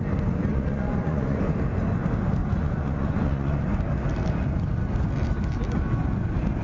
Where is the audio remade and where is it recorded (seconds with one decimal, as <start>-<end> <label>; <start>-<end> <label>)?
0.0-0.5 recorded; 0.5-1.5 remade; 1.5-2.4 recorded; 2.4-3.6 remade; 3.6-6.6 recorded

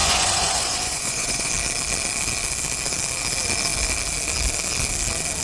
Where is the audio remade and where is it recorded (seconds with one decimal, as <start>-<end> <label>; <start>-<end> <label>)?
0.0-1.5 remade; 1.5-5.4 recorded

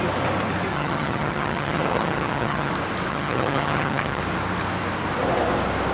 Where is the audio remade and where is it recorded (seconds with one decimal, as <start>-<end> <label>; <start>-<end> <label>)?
0.0-0.7 recorded; 0.7-2.7 remade; 2.7-3.1 recorded; 3.1-4.2 remade; 4.2-5.9 recorded